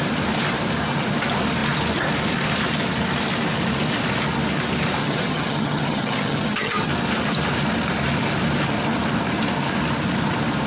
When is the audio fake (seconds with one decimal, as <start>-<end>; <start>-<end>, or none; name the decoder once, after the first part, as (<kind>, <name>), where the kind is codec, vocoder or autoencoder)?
5.0-6.9 (vocoder, HiFi-GAN)